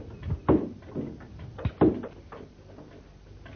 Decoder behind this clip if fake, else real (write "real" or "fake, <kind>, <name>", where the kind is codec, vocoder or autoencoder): real